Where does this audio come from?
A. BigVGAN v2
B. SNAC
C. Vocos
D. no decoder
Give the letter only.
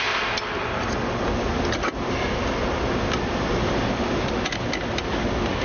D